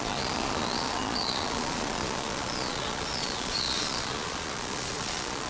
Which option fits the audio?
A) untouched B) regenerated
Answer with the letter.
B